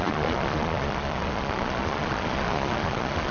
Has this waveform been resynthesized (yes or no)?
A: yes